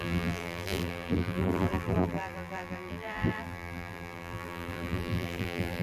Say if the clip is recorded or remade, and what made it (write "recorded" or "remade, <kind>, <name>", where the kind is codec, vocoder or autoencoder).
remade, vocoder, BigVGAN v2